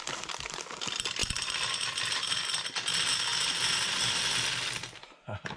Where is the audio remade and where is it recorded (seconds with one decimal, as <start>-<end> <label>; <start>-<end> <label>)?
0.0-5.6 recorded